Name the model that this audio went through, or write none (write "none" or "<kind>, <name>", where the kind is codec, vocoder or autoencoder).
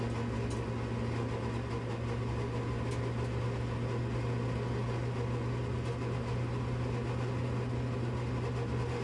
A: none